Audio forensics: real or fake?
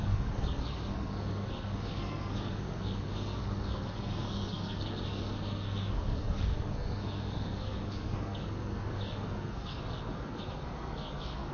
fake